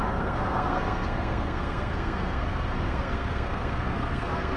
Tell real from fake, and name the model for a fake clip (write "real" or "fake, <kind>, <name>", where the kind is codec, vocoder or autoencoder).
fake, codec, SNAC